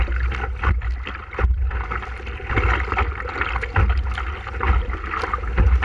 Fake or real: real